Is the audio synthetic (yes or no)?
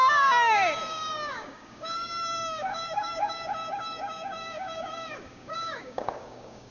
yes